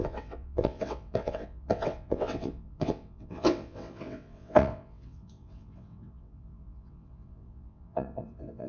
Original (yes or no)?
no